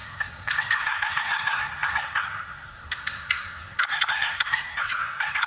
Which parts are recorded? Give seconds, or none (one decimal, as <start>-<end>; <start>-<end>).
none